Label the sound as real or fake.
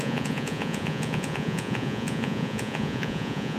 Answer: fake